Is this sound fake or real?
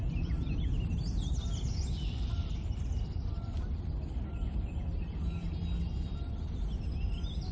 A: real